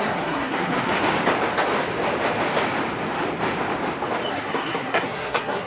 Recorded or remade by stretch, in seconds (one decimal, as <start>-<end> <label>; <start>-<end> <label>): 0.0-0.9 remade; 0.9-4.3 recorded; 4.3-5.7 remade